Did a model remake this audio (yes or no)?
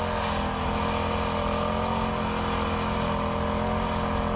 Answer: no